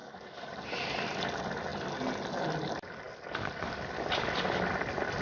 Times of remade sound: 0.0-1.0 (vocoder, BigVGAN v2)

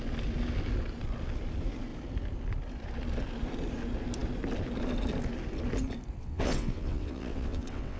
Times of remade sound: 6.2-8.0 (vocoder, WaveNeXt)